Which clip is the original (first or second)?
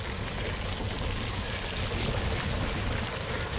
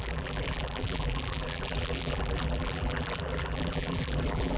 first